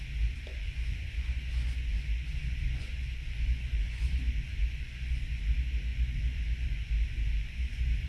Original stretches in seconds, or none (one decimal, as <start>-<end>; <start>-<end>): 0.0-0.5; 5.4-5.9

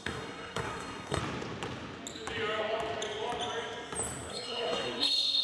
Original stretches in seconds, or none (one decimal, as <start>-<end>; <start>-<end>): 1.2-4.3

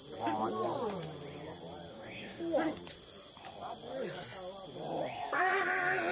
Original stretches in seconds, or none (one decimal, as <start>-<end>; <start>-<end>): 0.0-1.9; 2.4-6.1